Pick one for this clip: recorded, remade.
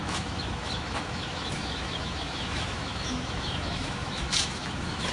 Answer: remade